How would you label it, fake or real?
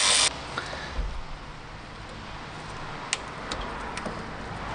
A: real